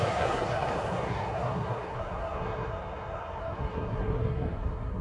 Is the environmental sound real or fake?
fake